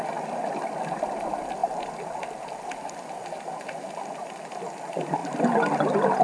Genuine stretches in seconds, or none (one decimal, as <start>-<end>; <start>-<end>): 0.0-6.2